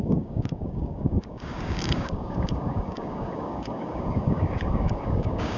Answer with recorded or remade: remade